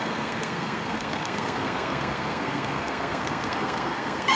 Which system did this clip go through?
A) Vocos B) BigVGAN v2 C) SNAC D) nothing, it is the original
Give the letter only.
C